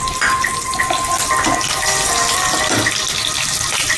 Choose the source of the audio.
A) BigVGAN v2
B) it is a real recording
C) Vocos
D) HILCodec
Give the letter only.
B